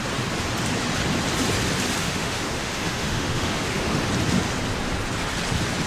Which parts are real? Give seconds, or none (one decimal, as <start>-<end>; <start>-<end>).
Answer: 0.0-2.0; 4.1-5.9